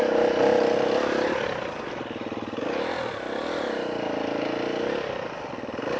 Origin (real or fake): real